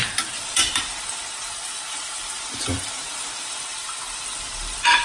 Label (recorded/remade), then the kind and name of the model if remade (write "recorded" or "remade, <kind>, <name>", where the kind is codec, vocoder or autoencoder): recorded